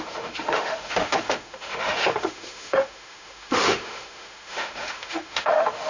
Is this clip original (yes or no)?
no